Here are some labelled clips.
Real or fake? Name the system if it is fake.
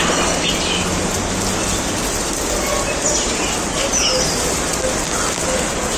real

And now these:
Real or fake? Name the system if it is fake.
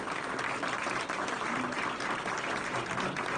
real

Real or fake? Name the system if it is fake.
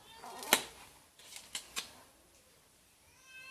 real